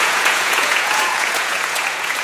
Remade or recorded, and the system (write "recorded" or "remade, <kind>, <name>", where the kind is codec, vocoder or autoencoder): remade, vocoder, Vocos